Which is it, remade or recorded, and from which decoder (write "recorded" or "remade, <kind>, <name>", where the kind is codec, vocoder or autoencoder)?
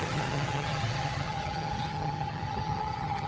remade, vocoder, HiFi-GAN